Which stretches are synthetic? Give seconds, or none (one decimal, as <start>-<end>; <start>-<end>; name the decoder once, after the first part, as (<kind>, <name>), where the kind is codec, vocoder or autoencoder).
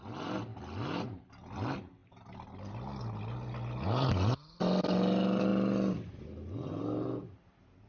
none